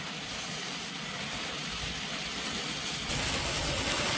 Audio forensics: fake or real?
real